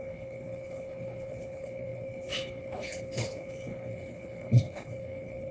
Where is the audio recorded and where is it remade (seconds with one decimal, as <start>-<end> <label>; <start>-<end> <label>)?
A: 0.0-5.5 remade